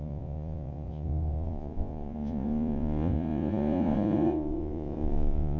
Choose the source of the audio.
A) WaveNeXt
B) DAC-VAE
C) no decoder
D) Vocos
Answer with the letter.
D